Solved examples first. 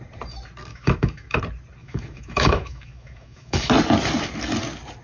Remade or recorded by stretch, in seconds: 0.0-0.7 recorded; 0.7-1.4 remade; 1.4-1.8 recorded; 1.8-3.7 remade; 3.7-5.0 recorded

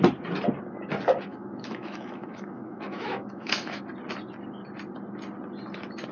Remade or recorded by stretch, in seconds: 0.0-1.3 recorded; 1.3-3.8 remade; 3.8-6.1 recorded

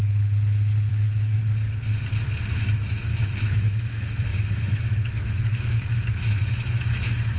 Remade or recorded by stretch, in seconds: 0.0-0.9 recorded; 0.9-1.4 remade; 1.4-2.5 recorded; 2.5-7.4 remade

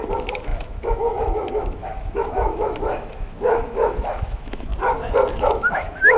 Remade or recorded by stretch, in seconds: 0.0-4.7 remade; 4.7-5.4 recorded; 5.4-6.2 remade

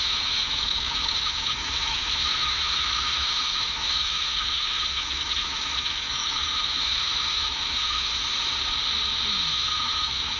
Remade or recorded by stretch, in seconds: 0.0-8.1 remade; 8.1-9.5 recorded; 9.5-10.4 remade

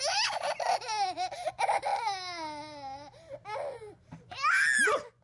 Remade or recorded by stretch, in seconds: 0.0-5.2 recorded